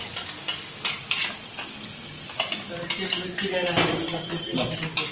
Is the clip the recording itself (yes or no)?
yes